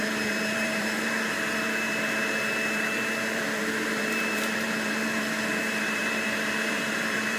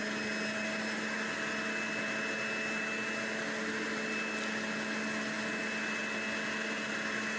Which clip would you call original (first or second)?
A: second